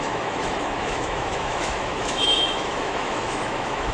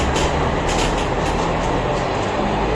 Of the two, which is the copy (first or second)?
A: first